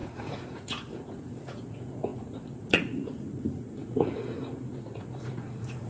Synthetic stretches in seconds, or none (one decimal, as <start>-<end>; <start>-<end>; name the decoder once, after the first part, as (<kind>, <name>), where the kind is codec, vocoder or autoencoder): 0.0-5.9 (vocoder, Vocos)

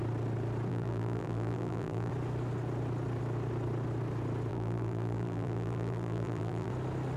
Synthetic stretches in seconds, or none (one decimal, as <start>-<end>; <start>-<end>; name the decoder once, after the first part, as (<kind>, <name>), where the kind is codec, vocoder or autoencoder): 0.7-2.1 (vocoder, BigVGAN v2); 4.5-6.7

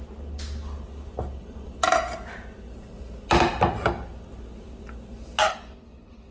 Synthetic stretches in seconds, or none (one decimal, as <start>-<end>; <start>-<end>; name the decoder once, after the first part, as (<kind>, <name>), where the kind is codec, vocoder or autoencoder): 5.5-6.3 (codec, HILCodec)

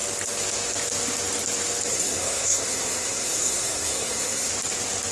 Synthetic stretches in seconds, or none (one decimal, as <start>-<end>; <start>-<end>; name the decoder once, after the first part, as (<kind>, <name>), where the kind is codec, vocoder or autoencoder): 1.9-4.5 (codec, SNAC)

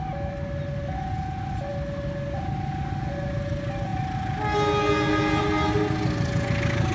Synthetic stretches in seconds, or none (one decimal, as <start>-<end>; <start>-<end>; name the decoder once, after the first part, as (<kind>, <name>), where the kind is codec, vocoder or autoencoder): none

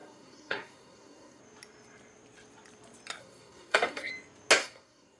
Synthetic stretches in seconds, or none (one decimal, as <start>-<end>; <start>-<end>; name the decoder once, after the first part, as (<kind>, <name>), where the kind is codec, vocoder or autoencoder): 0.0-1.4 (codec, SNAC); 3.2-4.1; 4.6-5.2

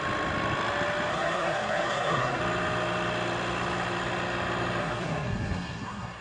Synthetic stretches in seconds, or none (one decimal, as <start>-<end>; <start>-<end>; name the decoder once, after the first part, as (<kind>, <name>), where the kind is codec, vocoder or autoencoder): 1.1-2.4 (codec, SNAC); 4.8-6.2